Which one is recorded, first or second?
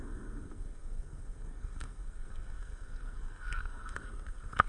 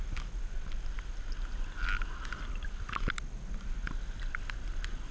second